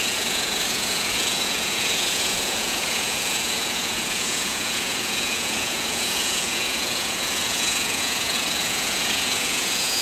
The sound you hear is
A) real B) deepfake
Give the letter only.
B